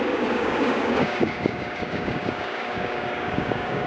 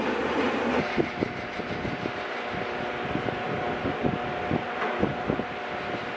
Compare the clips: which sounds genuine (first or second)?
second